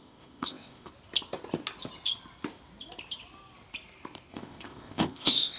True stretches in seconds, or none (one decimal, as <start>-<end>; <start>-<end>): 0.9-4.3